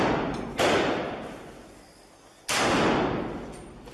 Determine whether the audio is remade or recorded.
recorded